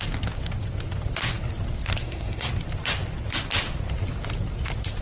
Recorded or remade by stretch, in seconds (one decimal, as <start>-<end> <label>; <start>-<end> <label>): 0.0-2.0 recorded; 2.0-2.5 remade; 2.5-5.0 recorded